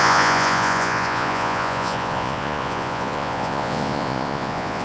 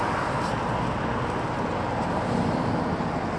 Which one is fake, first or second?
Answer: first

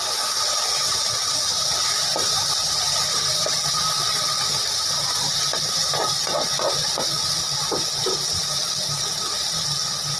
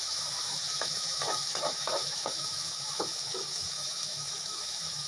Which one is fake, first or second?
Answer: second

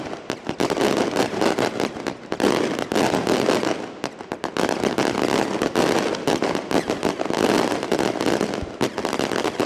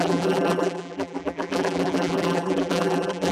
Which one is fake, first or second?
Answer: second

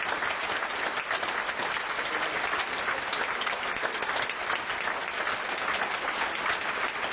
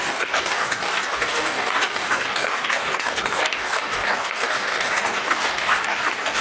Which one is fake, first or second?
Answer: second